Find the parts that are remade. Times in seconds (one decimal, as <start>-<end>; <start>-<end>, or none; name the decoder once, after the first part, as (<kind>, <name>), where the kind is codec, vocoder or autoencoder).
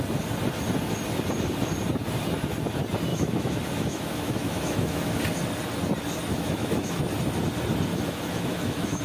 3.1-5.2 (autoencoder, DAC-VAE); 6.3-7.0; 7.9-9.0